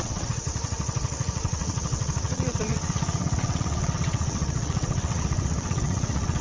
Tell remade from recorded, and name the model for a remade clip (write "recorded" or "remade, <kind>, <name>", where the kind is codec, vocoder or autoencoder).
remade, vocoder, WaveNeXt